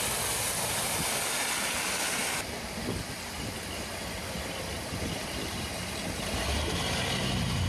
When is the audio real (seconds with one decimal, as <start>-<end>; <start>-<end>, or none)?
0.0-7.7